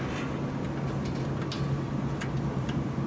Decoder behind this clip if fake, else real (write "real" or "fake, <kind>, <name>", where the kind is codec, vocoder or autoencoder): real